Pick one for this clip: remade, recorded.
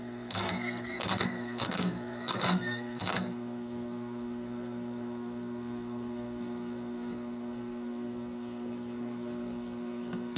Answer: remade